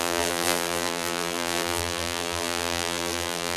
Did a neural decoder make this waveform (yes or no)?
yes